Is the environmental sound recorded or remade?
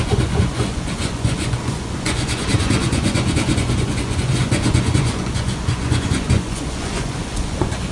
remade